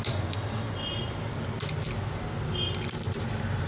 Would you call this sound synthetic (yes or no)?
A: no